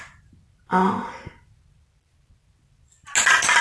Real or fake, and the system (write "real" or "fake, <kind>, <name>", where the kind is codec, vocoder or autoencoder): real